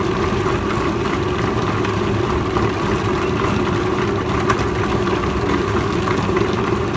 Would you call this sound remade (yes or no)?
yes